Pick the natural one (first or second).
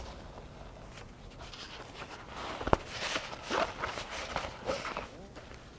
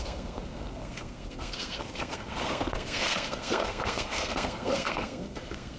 first